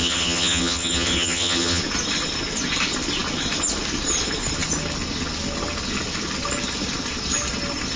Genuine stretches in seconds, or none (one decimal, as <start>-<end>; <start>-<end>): 1.8-8.0